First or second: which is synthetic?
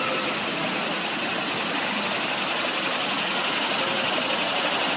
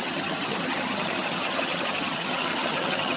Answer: second